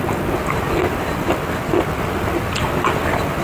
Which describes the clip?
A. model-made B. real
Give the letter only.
B